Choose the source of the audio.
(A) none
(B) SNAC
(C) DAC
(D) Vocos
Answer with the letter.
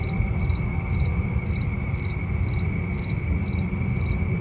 A